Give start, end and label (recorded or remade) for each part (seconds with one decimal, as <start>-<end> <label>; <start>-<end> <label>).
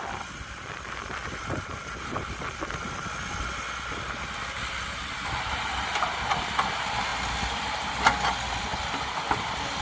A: 0.0-9.8 recorded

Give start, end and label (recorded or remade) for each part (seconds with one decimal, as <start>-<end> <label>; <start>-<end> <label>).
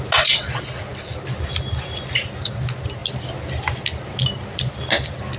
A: 0.0-5.4 recorded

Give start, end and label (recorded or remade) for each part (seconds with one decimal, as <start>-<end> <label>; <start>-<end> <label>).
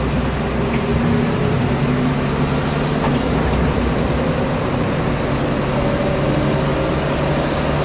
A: 0.0-7.8 recorded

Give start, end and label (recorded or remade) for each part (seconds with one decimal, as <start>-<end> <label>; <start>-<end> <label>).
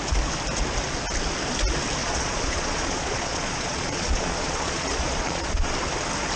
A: 0.0-2.0 recorded; 2.0-5.7 remade; 5.7-6.4 recorded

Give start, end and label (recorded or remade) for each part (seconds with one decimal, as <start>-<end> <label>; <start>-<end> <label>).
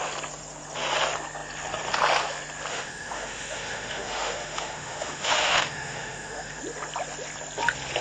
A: 0.0-2.7 recorded; 2.7-6.6 remade; 6.6-8.0 recorded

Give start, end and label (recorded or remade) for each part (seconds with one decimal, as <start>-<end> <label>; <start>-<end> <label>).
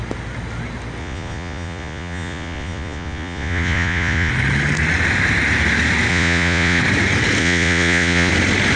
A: 0.0-1.0 recorded; 1.0-4.3 remade; 4.3-6.1 recorded; 6.1-6.8 remade; 6.8-7.4 recorded; 7.4-8.3 remade; 8.3-8.8 recorded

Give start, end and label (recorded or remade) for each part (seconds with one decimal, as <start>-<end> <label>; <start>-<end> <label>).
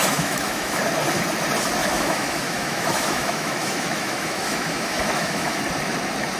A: 0.0-0.8 remade; 0.8-1.8 recorded; 1.8-5.6 remade; 5.6-6.4 recorded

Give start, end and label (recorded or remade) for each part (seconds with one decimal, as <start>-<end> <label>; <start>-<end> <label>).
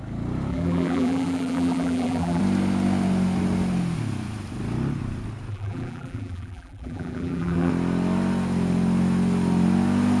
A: 0.0-0.5 recorded; 0.5-2.4 remade; 2.4-5.5 recorded; 5.5-7.7 remade; 7.7-10.2 recorded